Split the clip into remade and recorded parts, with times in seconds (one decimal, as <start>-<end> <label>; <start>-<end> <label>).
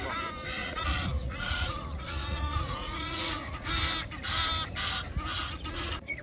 0.0-0.6 recorded; 0.6-3.7 remade; 3.7-5.3 recorded; 5.3-6.2 remade